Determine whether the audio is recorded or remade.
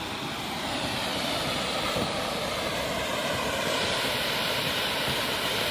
remade